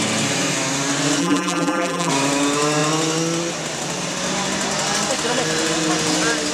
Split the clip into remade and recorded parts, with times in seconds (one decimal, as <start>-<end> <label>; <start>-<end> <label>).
0.0-1.2 recorded; 1.2-2.1 remade; 2.1-6.5 recorded